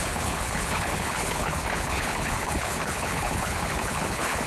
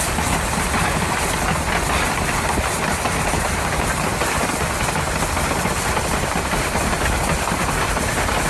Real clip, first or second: second